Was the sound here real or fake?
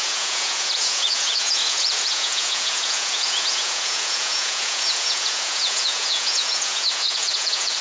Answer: fake